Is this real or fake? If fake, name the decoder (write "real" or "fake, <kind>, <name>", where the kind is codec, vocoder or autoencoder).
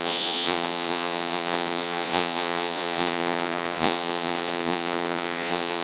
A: fake, vocoder, Vocos